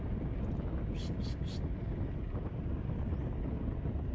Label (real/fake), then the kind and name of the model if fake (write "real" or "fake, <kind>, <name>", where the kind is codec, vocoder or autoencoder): real